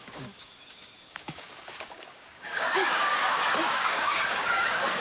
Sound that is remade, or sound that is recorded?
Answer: remade